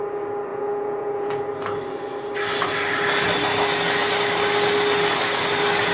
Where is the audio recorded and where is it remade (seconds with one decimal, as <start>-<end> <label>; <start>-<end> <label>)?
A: 0.0-0.5 recorded; 0.5-1.4 remade; 1.4-5.9 recorded